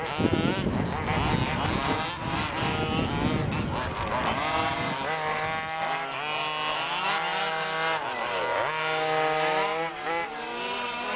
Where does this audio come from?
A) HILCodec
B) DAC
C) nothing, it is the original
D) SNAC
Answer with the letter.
C